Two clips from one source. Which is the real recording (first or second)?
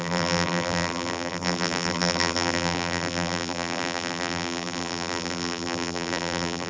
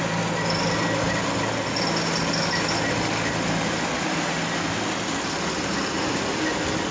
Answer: second